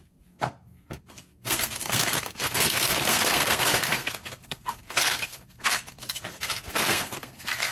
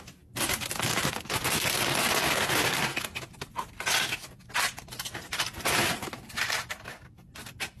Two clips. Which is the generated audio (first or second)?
first